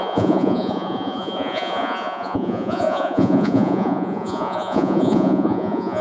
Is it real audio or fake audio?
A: fake